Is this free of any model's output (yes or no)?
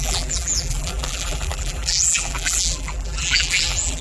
no